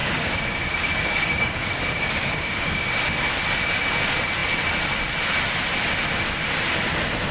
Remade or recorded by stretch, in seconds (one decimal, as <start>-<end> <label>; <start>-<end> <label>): 0.0-2.9 remade; 2.9-7.3 recorded